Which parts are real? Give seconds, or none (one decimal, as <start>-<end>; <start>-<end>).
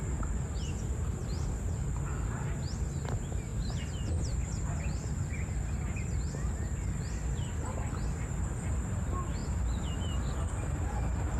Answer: 0.0-1.2; 1.9-3.5; 4.0-9.4; 10.3-11.4